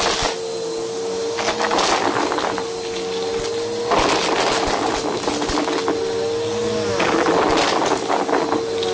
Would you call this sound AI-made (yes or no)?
no